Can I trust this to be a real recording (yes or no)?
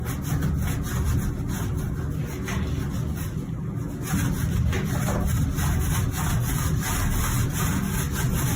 yes